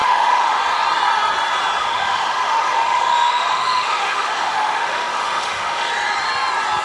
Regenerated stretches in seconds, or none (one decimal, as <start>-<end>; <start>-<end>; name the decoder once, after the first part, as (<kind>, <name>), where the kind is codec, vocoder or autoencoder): 0.0-0.6 (autoencoder, DAC-VAE); 1.8-5.9